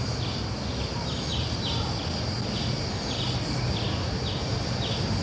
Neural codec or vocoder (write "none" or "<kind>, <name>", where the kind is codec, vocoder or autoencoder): none